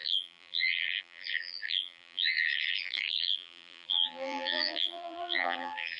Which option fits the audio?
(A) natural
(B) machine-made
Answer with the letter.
B